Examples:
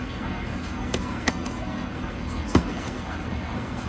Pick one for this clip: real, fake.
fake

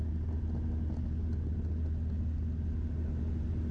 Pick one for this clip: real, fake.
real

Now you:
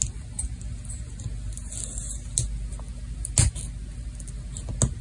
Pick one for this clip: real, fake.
real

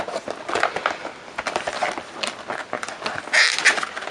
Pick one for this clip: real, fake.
real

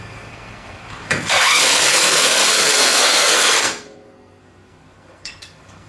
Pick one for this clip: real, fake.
fake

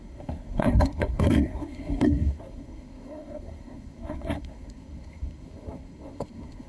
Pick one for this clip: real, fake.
fake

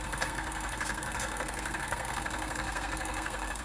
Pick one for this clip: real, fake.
fake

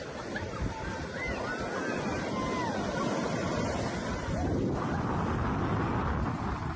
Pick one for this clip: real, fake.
real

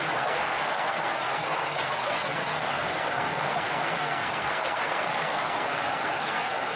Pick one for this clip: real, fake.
fake